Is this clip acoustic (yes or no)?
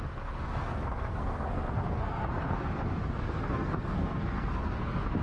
no